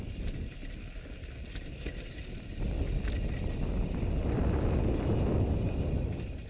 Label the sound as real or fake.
real